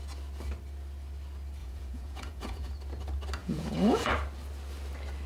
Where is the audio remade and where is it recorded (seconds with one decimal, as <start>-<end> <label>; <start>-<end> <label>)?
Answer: 0.0-1.6 recorded; 1.6-2.7 remade; 2.7-3.4 recorded; 3.4-4.1 remade; 4.1-5.3 recorded